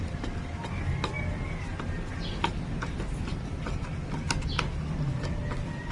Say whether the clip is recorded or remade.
recorded